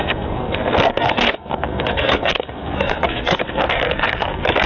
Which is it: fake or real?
fake